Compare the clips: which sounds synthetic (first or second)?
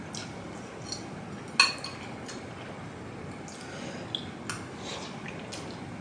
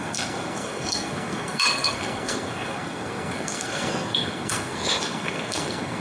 second